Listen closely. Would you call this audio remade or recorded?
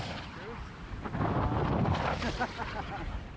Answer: recorded